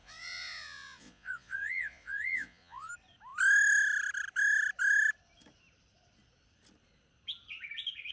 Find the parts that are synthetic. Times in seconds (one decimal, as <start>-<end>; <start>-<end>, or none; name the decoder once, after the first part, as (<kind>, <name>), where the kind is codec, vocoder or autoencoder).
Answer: 0.0-2.9 (vocoder, Vocos)